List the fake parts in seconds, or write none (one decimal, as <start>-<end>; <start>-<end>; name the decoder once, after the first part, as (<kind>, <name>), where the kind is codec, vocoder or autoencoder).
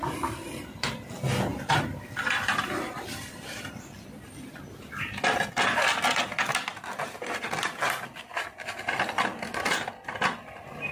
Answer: 1.5-3.7 (vocoder, BigVGAN v2); 6.7-7.6